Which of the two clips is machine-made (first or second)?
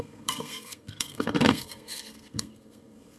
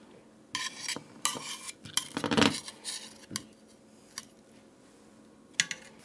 first